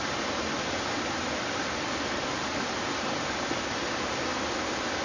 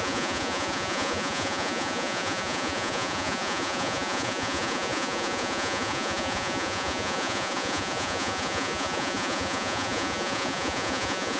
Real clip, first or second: first